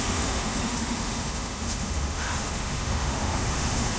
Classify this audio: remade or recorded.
remade